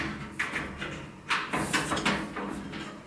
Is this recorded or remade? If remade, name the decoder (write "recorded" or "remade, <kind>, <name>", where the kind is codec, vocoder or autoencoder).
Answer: recorded